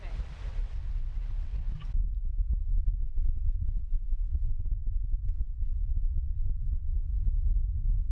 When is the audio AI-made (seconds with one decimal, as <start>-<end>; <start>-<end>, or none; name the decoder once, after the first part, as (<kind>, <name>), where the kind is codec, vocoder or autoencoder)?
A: 0.5-1.7 (vocoder, WaveNeXt); 2.7-7.0